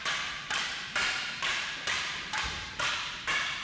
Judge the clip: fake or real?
fake